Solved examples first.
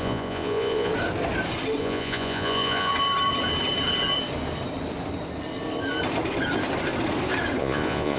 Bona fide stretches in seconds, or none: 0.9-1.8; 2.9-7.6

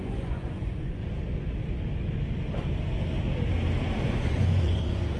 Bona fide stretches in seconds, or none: 1.0-4.1